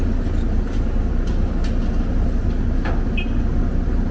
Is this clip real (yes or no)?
yes